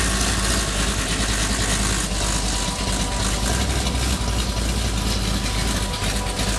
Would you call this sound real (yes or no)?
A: yes